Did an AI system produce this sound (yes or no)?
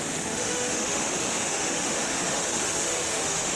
yes